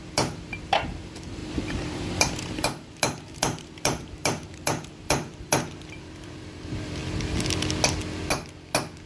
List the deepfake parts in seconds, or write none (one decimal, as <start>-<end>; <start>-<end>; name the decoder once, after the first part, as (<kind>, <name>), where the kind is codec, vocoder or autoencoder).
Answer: 0.0-7.0 (vocoder, BigVGAN v2)